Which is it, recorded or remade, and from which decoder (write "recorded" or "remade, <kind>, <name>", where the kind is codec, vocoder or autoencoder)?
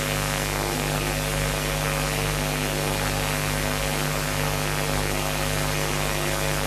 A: remade, codec, SNAC